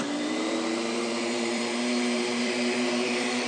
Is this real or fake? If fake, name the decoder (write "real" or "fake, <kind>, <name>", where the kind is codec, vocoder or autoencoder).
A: fake, vocoder, BigVGAN v2